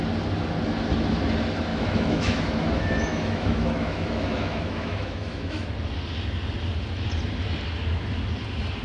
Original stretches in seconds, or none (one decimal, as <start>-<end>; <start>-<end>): 0.0-1.7; 5.7-8.8